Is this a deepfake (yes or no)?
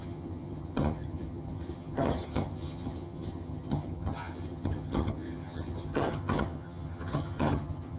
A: yes